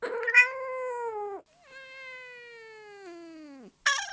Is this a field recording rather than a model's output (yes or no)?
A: yes